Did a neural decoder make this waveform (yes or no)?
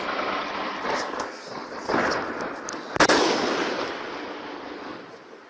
no